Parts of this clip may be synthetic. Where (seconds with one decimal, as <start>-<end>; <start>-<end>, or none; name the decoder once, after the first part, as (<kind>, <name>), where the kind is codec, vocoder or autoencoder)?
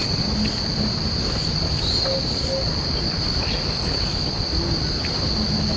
none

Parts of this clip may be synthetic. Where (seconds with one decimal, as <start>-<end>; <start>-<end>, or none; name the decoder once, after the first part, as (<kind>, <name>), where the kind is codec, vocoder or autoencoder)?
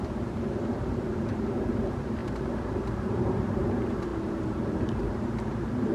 0.0-5.9 (vocoder, BigVGAN v2)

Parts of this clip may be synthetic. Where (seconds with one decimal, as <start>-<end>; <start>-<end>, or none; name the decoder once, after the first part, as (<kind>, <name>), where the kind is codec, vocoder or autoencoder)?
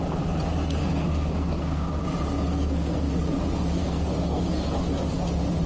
0.8-2.0 (codec, SNAC); 2.5-3.1; 3.8-4.4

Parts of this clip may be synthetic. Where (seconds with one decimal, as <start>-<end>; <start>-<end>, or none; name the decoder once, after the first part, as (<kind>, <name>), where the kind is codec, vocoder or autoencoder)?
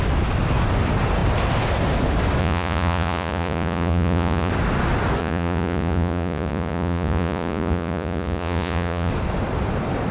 2.4-4.5 (vocoder, Vocos); 5.2-9.1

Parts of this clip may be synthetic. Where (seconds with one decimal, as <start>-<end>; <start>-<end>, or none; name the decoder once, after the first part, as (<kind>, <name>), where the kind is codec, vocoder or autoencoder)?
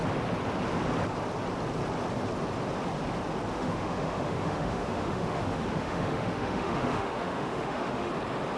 3.5-8.1 (autoencoder, DAC-VAE)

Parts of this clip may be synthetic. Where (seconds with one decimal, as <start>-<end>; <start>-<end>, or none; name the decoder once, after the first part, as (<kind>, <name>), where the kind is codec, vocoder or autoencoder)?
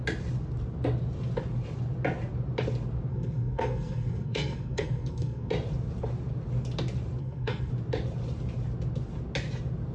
3.1-5.5 (codec, SNAC); 7.2-7.7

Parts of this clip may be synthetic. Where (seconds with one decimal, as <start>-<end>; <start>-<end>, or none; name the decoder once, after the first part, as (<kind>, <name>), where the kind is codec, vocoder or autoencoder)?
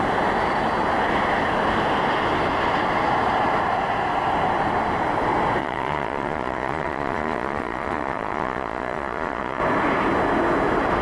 5.6-9.6 (vocoder, Vocos)